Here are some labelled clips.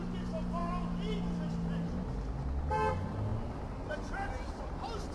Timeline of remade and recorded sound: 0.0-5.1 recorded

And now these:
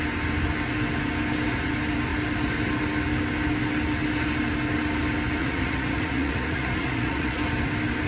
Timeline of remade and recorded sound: 0.0-5.4 recorded; 5.4-7.4 remade; 7.4-8.1 recorded

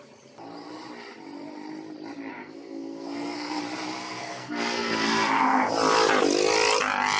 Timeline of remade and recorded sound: 0.0-2.3 recorded; 2.3-3.6 remade; 3.6-4.0 recorded; 4.0-5.7 remade; 5.7-7.2 recorded

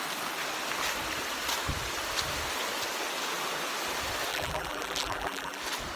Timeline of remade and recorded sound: 0.0-4.3 recorded; 4.3-5.6 remade; 5.6-6.0 recorded

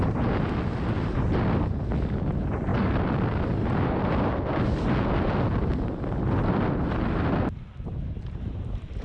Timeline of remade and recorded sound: 0.0-9.0 recorded